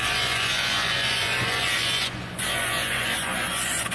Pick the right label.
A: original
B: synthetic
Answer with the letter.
B